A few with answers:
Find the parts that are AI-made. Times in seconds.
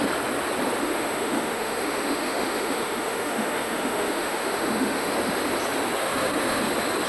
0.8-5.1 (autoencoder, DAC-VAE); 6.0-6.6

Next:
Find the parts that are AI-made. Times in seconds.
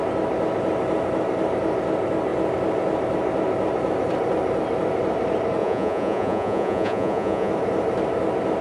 5.6-7.5 (vocoder, Vocos)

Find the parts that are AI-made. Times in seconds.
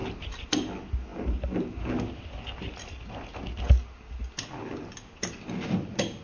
none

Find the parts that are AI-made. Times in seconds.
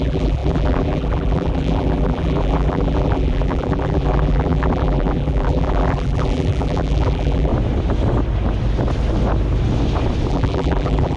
0.0-7.5 (vocoder, BigVGAN v2); 10.3-11.2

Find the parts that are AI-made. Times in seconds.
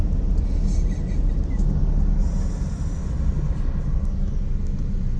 none